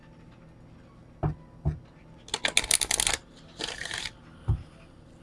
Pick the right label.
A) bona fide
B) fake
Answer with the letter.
A